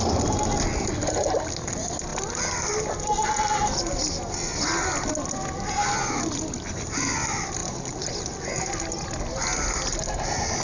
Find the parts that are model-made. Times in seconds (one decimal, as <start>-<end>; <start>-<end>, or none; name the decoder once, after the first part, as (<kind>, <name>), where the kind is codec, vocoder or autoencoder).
none